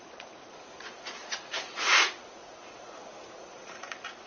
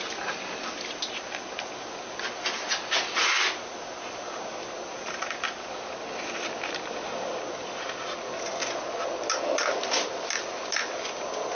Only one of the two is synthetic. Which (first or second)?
first